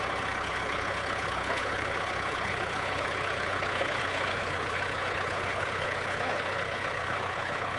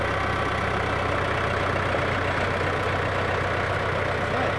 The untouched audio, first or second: second